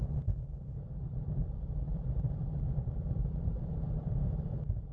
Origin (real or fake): fake